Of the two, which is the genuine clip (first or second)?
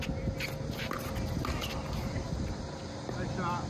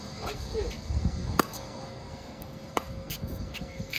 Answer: first